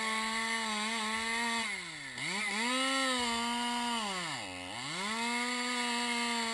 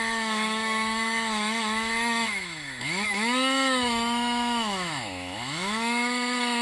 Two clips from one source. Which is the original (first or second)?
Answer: first